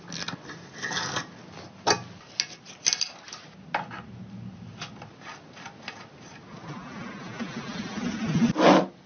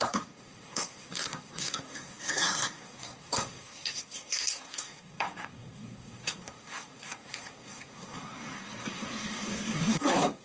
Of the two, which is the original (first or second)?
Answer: first